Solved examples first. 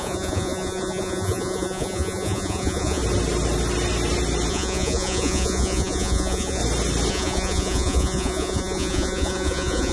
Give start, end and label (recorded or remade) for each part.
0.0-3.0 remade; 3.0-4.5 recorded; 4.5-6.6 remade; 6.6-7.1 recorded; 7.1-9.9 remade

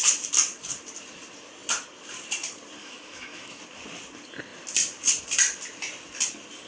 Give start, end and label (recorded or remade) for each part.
0.0-2.8 recorded; 2.8-3.6 remade; 3.6-6.7 recorded

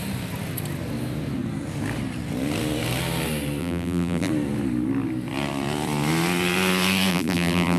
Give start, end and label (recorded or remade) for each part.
0.0-3.6 recorded; 3.6-4.3 remade; 4.3-7.1 recorded; 7.1-7.8 remade

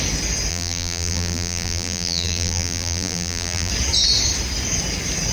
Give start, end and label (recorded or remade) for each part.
0.0-0.5 recorded; 0.5-3.7 remade; 3.7-5.3 recorded